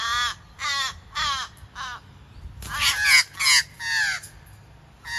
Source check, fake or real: real